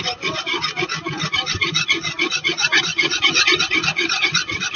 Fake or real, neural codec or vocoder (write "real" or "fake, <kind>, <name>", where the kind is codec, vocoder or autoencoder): real